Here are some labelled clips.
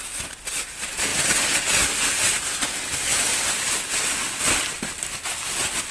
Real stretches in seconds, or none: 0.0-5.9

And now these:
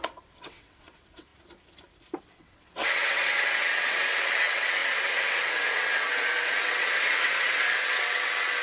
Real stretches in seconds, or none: 1.3-2.2

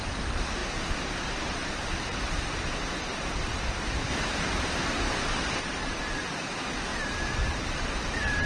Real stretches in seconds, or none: 0.0-0.6; 2.7-4.0; 6.0-6.9; 7.5-8.5

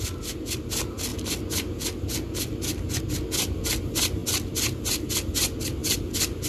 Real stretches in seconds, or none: 0.0-6.5

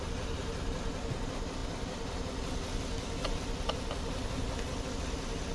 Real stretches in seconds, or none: 0.0-5.5

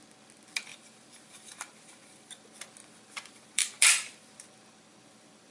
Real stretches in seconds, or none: 0.0-0.7; 2.3-2.8; 4.4-5.5

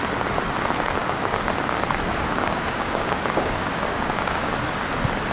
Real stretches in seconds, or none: 0.0-1.0; 1.5-2.1; 4.5-5.3

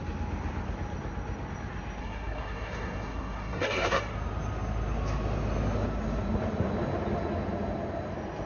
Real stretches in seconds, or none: 0.0-2.0; 4.0-8.5